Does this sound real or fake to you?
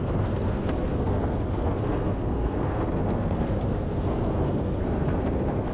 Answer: fake